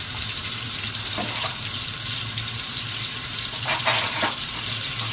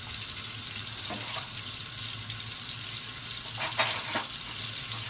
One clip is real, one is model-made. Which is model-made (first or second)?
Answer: first